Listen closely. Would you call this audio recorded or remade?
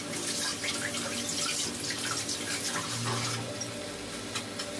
recorded